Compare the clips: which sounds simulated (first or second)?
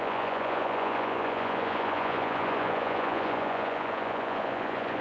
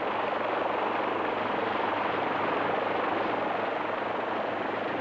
first